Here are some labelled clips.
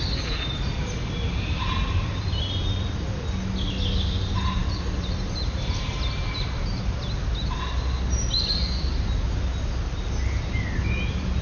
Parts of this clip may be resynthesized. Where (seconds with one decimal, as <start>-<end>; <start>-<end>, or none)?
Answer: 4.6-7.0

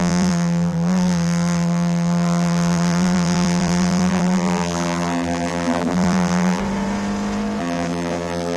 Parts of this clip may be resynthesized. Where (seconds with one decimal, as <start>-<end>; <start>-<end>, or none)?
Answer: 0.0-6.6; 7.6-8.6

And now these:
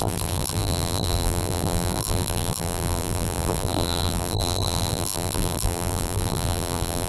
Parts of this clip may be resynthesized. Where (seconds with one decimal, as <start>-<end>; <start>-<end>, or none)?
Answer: 0.0-7.1

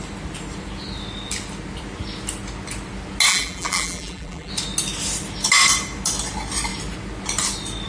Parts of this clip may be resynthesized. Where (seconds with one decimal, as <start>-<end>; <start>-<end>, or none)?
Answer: 3.3-4.5

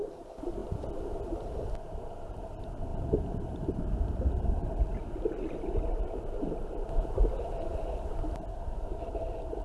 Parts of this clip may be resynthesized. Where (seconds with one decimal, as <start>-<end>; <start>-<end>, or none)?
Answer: 0.0-9.6

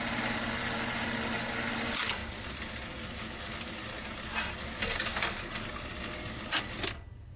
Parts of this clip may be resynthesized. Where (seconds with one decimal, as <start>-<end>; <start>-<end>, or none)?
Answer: none